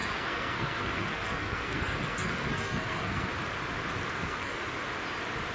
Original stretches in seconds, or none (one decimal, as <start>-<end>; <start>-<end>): 3.3-4.1; 4.6-5.5